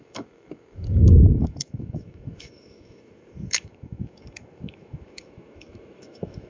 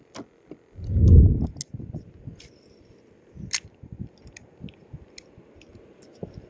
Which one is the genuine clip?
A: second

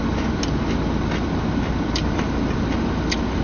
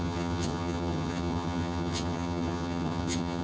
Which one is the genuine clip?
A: first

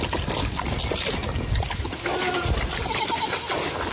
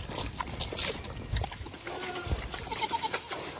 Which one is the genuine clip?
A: first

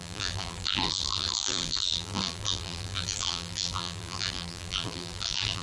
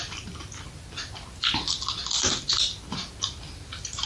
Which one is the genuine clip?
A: second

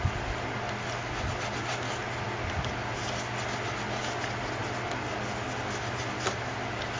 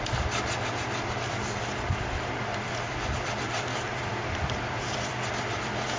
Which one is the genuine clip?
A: first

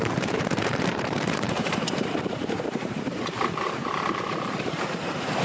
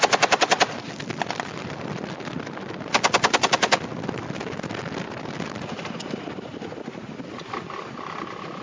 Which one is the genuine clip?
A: second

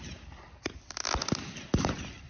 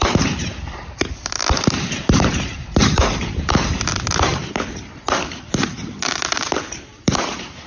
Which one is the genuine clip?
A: first